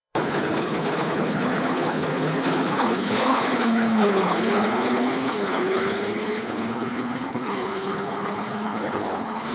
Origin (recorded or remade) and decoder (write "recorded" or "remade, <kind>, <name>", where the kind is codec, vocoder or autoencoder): remade, codec, HILCodec